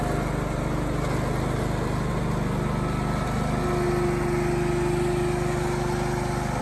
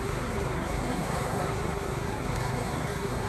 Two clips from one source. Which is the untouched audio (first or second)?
first